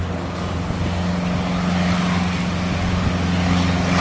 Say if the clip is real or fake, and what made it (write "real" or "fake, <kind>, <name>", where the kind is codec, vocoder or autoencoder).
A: real